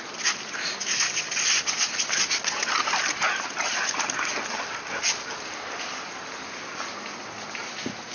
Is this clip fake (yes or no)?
no